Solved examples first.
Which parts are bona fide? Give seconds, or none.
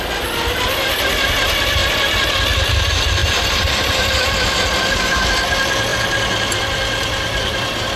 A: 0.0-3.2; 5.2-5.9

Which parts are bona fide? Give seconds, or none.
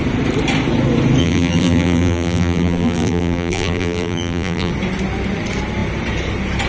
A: 0.0-1.2; 4.7-6.7